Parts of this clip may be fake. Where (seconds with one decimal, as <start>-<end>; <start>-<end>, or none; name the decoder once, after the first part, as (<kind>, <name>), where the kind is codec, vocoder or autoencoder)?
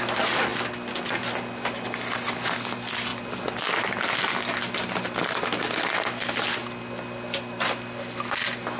none